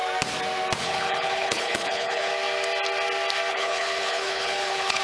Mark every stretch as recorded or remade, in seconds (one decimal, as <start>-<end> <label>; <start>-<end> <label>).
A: 0.0-0.8 recorded; 0.8-2.3 remade; 2.3-3.5 recorded; 3.5-5.0 remade